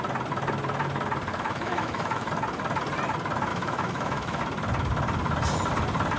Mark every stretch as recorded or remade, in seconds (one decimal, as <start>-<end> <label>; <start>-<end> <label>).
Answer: 0.0-1.3 recorded; 1.3-2.3 remade; 2.3-3.5 recorded; 3.5-4.4 remade; 4.4-6.2 recorded